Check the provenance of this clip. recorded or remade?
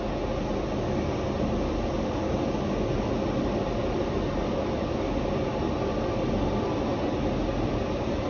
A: recorded